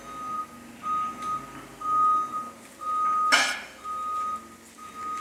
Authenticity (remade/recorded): recorded